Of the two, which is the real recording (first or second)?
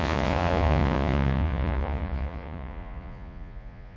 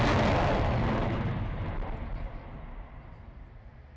second